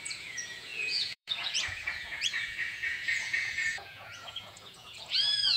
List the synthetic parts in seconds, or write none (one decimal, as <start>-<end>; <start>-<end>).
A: 0.0-5.6